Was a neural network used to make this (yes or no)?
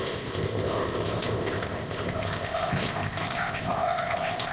yes